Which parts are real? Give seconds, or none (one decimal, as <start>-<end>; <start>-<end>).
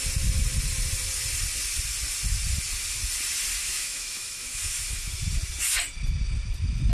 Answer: 0.0-3.6; 5.2-6.9